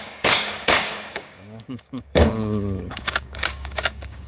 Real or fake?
fake